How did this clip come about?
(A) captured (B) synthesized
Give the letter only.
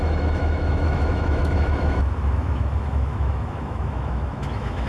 B